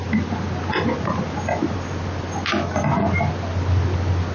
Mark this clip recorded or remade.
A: recorded